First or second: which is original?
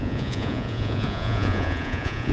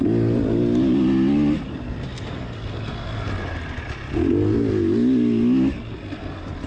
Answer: second